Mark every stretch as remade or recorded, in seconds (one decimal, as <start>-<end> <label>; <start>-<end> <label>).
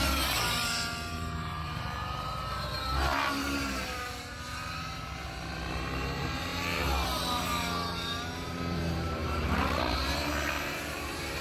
0.0-6.5 remade; 6.5-7.9 recorded; 7.9-11.4 remade